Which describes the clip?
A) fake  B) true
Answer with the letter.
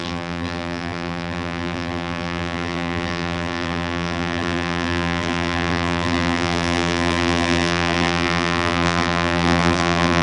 A